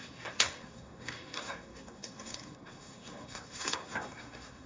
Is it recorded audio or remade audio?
remade